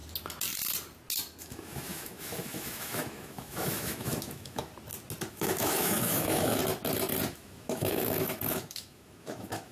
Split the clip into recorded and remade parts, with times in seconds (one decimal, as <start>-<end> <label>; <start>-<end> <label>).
0.0-1.4 recorded; 1.4-4.7 remade; 4.7-5.3 recorded; 5.3-6.6 remade; 6.6-7.3 recorded; 7.3-9.7 remade